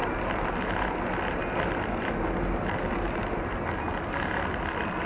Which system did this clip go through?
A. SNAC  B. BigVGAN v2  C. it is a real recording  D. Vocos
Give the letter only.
C